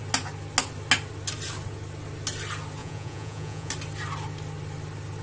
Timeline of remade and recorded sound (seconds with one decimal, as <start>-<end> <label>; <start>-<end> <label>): 0.0-2.8 recorded; 2.8-3.7 remade; 3.7-5.2 recorded